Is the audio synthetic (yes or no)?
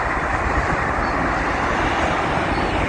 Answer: no